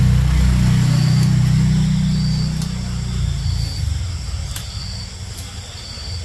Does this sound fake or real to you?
real